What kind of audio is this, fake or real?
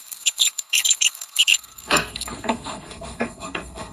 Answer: fake